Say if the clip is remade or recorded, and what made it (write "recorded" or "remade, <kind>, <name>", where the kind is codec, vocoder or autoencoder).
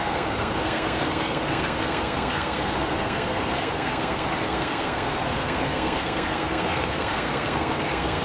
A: remade, codec, SNAC